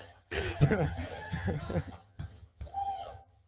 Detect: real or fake fake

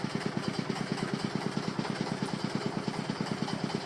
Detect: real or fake real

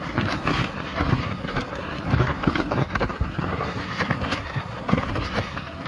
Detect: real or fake fake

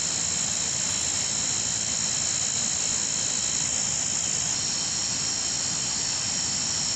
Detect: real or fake real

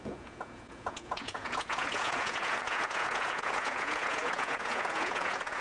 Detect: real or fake fake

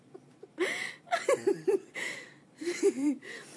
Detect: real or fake fake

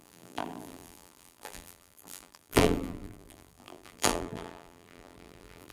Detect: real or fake fake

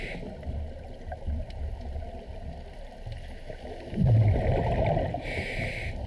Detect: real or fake real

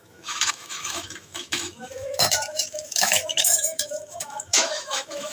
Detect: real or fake fake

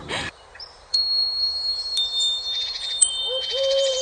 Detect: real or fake fake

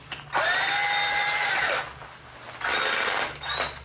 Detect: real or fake real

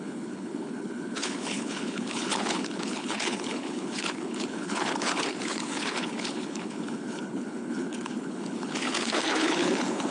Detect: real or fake fake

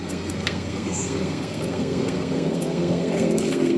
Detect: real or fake fake